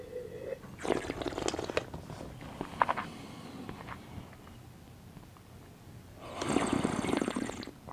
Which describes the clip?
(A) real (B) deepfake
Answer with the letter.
A